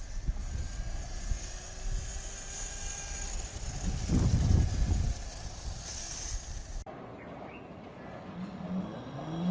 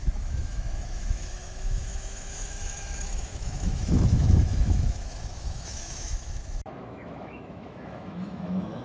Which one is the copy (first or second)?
second